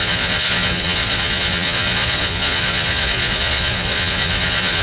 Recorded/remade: remade